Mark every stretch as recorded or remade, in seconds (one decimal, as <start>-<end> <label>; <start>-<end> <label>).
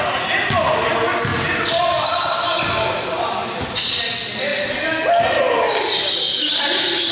0.0-7.1 recorded